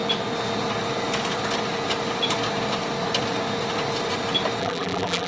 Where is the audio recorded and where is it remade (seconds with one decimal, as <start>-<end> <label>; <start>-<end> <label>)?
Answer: 0.0-4.6 recorded; 4.6-5.3 remade